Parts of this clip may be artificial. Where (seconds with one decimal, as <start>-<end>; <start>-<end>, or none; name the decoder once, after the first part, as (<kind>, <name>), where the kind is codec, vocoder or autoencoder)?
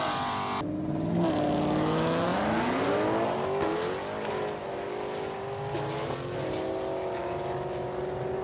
none